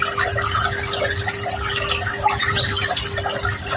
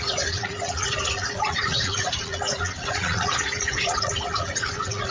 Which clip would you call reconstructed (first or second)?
second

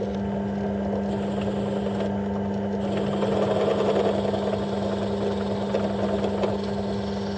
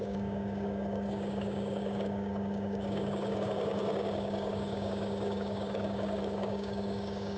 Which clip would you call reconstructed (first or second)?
second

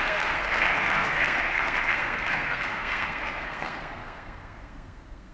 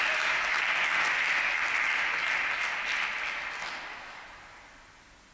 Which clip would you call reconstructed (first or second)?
first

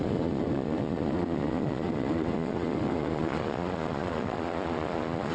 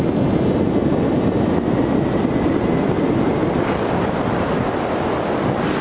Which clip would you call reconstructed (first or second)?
first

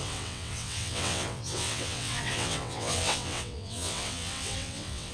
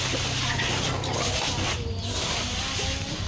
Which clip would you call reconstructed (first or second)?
first